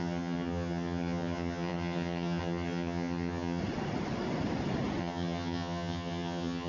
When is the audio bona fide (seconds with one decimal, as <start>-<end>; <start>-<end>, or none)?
3.6-5.0